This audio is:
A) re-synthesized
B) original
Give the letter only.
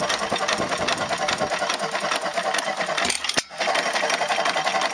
B